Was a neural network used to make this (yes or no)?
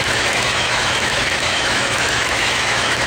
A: yes